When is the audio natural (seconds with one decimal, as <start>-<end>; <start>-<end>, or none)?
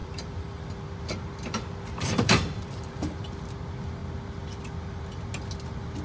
0.7-2.1; 3.1-6.0